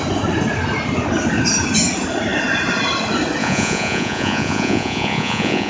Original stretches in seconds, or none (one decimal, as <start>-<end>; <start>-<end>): 0.0-3.4